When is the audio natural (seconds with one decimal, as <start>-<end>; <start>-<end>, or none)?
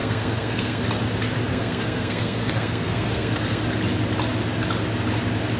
0.8-1.5; 3.6-5.6